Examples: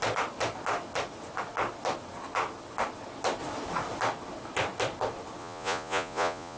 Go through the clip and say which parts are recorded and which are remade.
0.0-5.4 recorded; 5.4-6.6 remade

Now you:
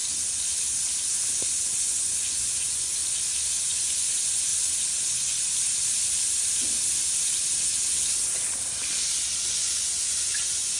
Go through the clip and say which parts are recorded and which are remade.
0.0-1.4 recorded; 1.4-3.0 remade; 3.0-3.7 recorded; 3.7-4.5 remade; 4.5-9.5 recorded; 9.5-10.8 remade

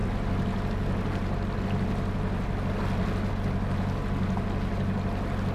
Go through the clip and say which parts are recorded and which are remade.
0.0-5.5 recorded

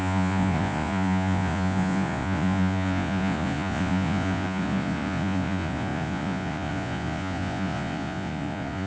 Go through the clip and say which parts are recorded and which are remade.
0.0-8.9 remade

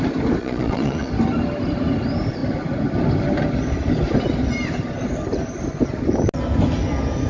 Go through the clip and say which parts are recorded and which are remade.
0.0-0.4 recorded; 0.4-1.1 remade; 1.1-7.3 recorded